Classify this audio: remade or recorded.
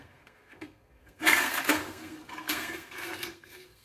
remade